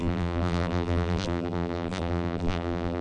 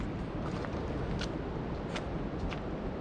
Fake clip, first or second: first